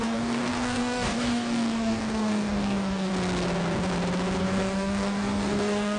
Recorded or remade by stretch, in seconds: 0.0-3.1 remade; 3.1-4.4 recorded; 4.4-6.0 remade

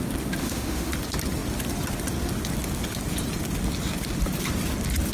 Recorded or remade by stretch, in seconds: 0.0-0.4 recorded; 0.4-0.9 remade; 0.9-5.1 recorded

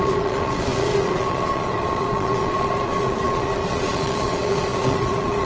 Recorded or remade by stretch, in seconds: 0.0-5.5 remade

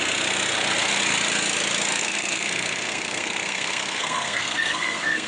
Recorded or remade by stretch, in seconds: 0.0-2.0 recorded; 2.0-5.3 remade

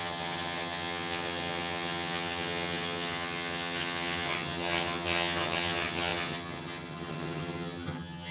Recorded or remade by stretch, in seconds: 0.0-8.3 remade